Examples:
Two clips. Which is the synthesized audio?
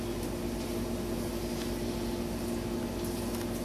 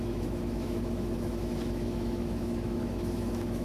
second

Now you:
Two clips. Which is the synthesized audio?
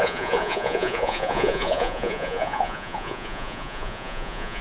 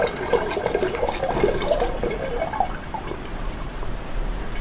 first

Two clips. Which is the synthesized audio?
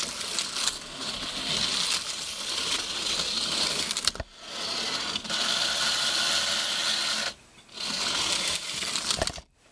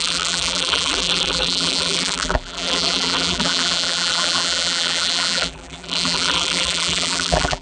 second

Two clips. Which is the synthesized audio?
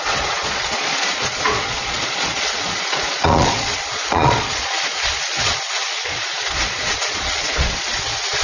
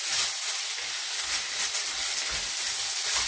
first